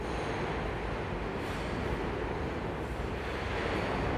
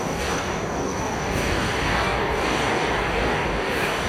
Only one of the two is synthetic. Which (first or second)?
second